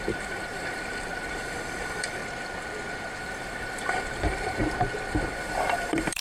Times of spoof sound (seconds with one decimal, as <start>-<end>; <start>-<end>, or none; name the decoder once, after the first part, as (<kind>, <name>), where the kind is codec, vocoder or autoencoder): 0.0-2.2 (vocoder, BigVGAN v2); 3.2-4.6; 5.1-6.2